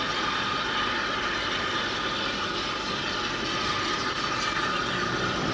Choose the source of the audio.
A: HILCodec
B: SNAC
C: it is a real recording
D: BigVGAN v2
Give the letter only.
C